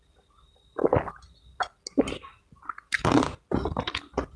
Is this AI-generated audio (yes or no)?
no